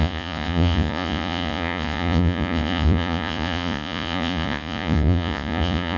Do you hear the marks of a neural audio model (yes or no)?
yes